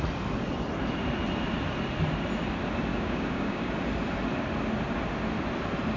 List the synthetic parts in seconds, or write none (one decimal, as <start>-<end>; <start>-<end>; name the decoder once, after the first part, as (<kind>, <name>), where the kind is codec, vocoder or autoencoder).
2.9-3.7 (codec, DAC)